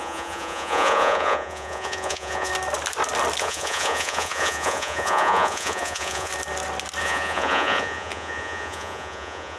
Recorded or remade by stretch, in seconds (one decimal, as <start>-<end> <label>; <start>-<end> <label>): 0.0-2.5 remade; 2.5-3.4 recorded; 3.4-6.3 remade; 6.3-7.0 recorded; 7.0-9.6 remade